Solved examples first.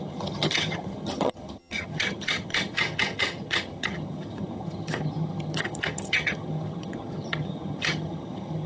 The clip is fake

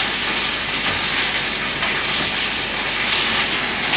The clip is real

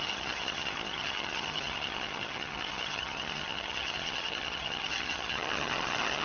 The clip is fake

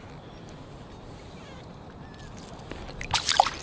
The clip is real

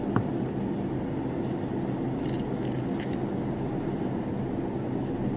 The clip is real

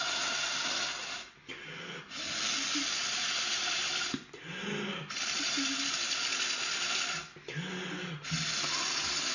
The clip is real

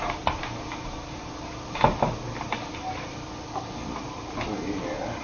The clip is real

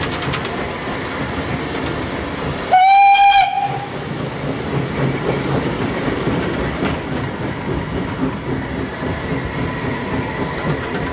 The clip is real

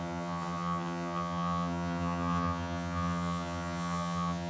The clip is fake